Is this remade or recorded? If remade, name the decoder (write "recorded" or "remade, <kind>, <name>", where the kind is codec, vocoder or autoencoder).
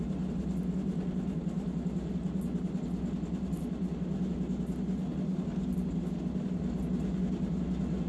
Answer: recorded